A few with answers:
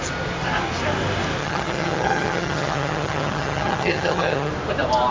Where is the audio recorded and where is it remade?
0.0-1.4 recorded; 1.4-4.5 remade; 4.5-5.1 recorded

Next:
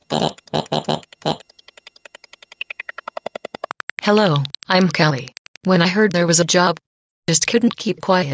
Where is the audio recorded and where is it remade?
0.0-3.7 remade; 3.7-8.3 recorded

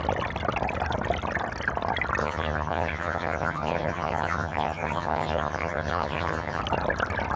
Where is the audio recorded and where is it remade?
0.0-2.2 recorded; 2.2-6.6 remade; 6.6-7.4 recorded

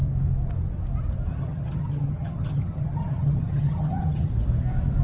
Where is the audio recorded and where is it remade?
0.0-1.3 recorded; 1.3-4.3 remade; 4.3-5.0 recorded